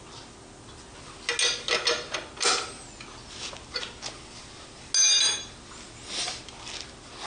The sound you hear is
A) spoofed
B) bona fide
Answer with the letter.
B